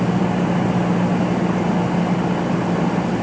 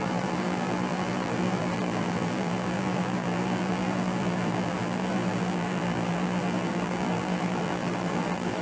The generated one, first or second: second